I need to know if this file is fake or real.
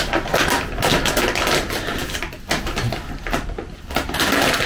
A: real